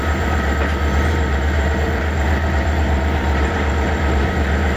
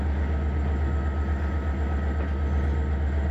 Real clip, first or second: second